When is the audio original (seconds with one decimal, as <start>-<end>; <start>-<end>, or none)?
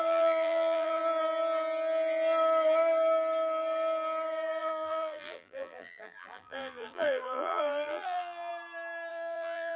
1.0-4.6; 8.5-9.1